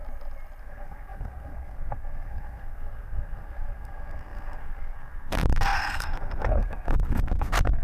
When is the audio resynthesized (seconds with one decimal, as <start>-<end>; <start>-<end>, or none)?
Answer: 0.6-7.8